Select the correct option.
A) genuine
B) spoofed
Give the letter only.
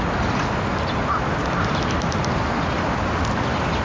A